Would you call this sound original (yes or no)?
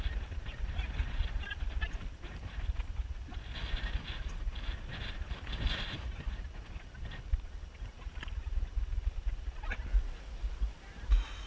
yes